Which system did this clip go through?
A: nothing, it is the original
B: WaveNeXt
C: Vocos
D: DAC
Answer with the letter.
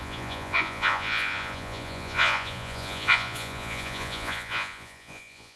C